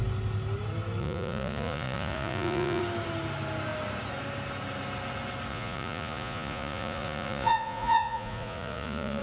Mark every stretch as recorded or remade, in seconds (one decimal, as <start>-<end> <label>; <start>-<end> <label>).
0.0-1.0 recorded; 1.0-2.8 remade; 2.8-5.5 recorded; 5.5-9.2 remade